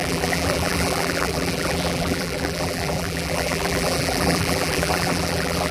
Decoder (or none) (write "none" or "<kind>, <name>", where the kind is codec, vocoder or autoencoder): vocoder, BigVGAN v2